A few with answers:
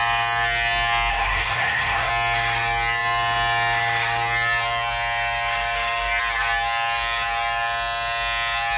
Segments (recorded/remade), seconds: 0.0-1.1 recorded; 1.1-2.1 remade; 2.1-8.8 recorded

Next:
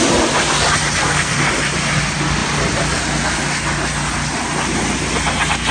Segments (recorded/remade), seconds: 0.0-1.0 recorded; 1.0-1.5 remade; 1.5-5.7 recorded

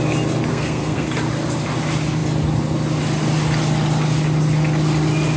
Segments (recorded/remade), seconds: 0.0-0.5 recorded; 0.5-1.1 remade; 1.1-5.4 recorded

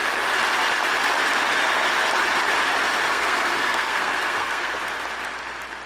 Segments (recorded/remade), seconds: 0.0-3.1 recorded; 3.1-4.8 remade; 4.8-5.9 recorded

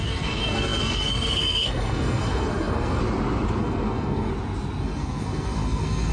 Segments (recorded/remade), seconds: 0.0-3.0 remade; 3.0-3.6 recorded; 3.6-4.3 remade; 4.3-4.8 recorded; 4.8-6.1 remade

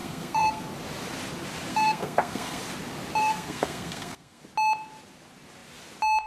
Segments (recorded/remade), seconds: 0.0-0.6 remade; 0.6-1.7 recorded; 1.7-2.6 remade; 2.6-3.2 recorded; 3.2-4.4 remade; 4.4-6.3 recorded